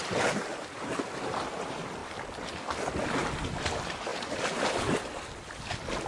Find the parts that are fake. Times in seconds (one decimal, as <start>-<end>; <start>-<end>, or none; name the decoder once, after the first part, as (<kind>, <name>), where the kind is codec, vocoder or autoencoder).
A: 2.0-2.9 (vocoder, BigVGAN v2); 4.1-5.2